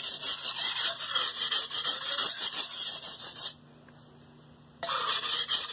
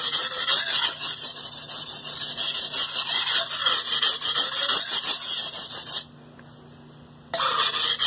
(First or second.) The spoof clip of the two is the first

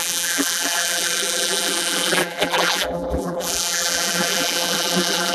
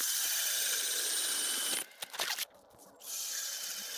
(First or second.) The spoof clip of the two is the first